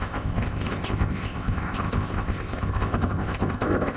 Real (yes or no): no